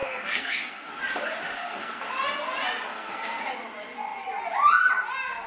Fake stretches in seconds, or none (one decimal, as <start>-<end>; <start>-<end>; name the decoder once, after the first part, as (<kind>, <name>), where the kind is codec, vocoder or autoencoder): 0.0-1.0 (codec, SNAC); 1.6-2.1; 2.9-3.4